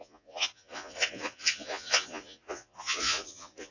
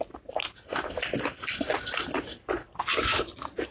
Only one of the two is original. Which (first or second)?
second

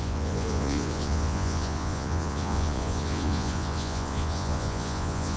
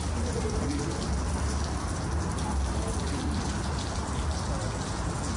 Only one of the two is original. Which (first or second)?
second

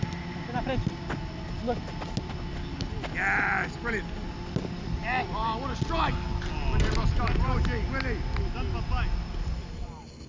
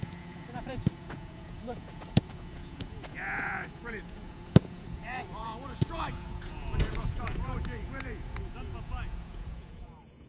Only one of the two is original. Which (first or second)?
first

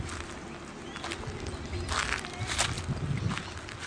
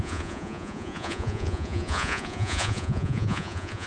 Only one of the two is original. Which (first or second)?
first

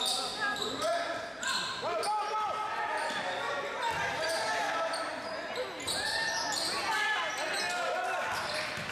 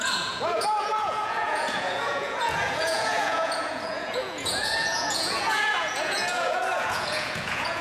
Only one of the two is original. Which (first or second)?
first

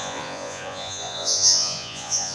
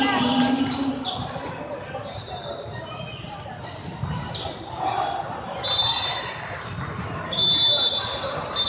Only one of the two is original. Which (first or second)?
second